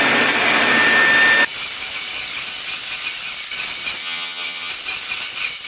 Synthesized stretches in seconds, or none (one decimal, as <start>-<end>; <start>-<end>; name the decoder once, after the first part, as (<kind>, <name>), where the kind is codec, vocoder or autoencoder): 4.0-4.7 (vocoder, HiFi-GAN)